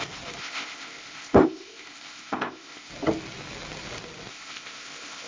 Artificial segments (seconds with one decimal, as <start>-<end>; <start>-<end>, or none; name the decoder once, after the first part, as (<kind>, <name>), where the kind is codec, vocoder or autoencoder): 0.4-2.9 (codec, ZipCodec); 4.3-5.3